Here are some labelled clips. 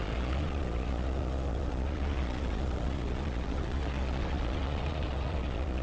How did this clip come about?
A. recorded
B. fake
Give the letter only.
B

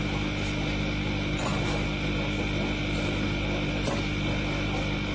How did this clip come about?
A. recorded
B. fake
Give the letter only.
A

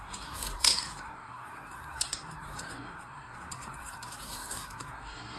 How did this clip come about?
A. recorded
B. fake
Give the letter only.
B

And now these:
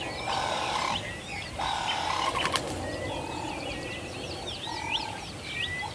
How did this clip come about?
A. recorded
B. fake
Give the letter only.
A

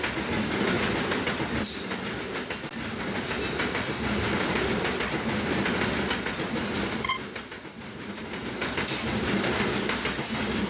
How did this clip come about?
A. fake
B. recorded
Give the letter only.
B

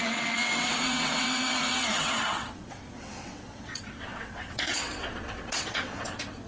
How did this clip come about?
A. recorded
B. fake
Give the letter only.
B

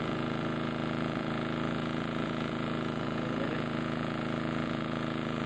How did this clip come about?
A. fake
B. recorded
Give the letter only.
A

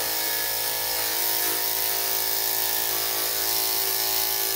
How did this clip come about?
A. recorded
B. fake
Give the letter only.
A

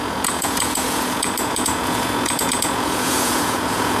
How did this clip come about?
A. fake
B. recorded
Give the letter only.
A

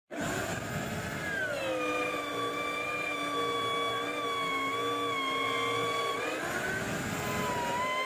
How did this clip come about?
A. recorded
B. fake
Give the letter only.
A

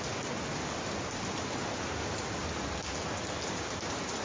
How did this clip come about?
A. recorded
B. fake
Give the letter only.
A